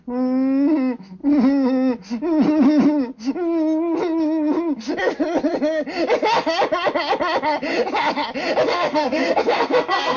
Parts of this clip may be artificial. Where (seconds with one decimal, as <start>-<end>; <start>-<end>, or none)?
8.7-10.2